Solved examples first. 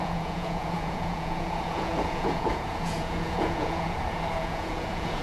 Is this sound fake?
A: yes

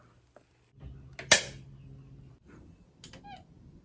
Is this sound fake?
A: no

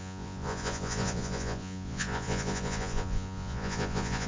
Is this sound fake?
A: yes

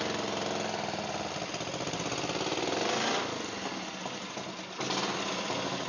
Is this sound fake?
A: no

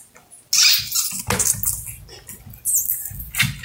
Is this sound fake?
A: no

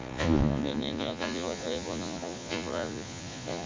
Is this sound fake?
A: yes